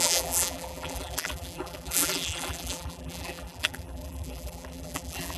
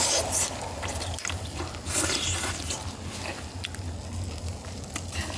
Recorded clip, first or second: second